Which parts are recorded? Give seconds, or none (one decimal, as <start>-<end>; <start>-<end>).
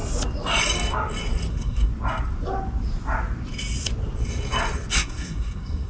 0.0-1.5; 1.9-4.9